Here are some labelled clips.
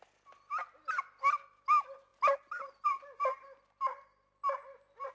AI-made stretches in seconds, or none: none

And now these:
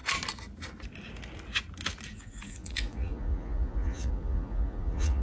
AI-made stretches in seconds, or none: 2.1-5.2 (vocoder, Vocos)

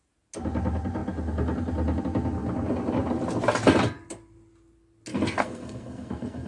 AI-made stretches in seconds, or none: 5.1-6.5 (codec, SNAC)

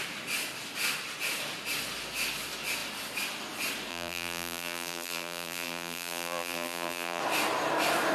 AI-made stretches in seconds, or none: 3.9-7.2 (vocoder, BigVGAN v2)